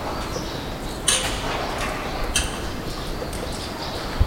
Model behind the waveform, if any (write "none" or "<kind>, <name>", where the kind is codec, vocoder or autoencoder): none